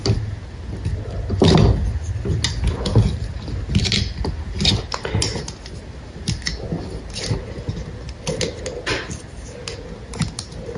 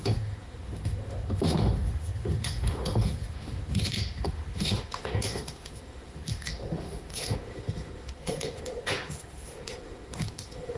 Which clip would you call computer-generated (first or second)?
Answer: second